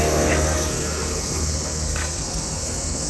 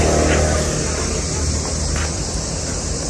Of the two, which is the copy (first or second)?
first